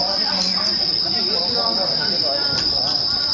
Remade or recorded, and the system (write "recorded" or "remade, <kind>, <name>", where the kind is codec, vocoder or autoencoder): remade, vocoder, BigVGAN v2